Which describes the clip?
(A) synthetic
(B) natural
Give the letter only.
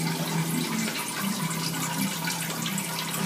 B